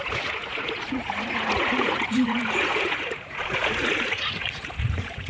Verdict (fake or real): fake